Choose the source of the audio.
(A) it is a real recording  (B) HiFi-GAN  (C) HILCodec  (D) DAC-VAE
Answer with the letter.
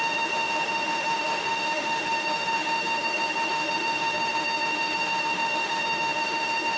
D